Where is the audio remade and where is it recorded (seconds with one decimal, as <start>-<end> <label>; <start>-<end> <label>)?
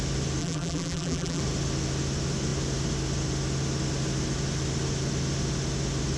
0.0-0.4 recorded; 0.4-1.4 remade; 1.4-6.2 recorded